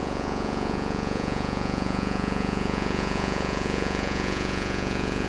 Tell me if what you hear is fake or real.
fake